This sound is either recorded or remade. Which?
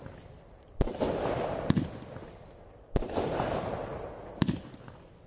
recorded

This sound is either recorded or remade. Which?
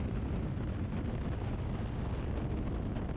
recorded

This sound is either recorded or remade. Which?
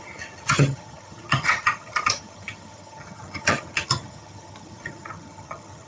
remade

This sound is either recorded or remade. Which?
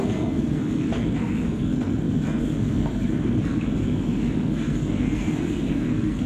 remade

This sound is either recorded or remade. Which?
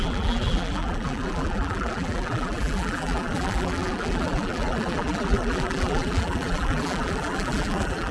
remade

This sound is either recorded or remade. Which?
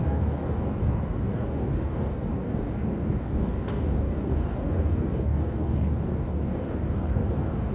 remade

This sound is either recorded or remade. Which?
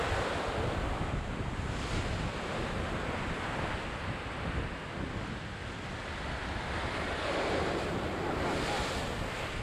recorded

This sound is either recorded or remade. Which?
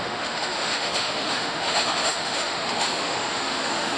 remade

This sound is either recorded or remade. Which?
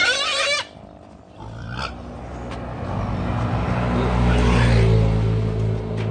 recorded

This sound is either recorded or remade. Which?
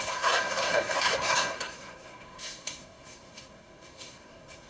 remade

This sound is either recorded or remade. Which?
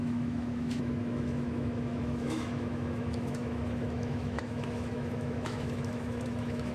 remade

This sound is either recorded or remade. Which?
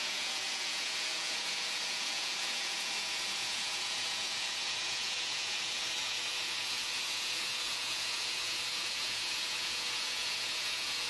remade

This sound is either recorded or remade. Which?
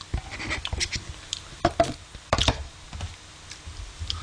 recorded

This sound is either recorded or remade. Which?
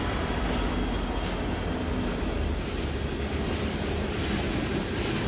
recorded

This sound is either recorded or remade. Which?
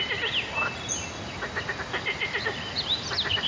recorded